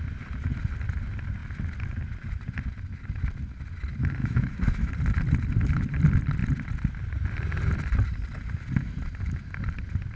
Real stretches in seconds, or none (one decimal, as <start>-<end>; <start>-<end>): 0.0-4.2; 4.9-10.2